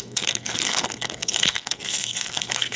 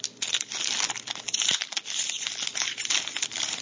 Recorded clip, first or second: second